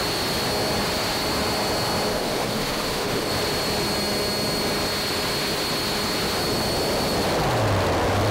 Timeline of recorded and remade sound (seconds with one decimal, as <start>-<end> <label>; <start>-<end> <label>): 0.0-2.1 recorded; 2.1-3.3 remade; 3.3-8.3 recorded